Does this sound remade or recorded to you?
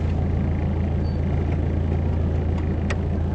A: recorded